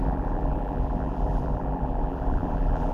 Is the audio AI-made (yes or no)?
yes